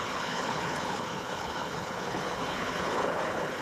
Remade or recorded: remade